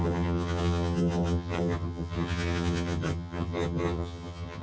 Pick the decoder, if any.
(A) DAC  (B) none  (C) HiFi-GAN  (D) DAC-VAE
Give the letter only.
C